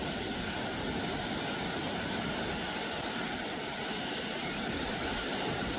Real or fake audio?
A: real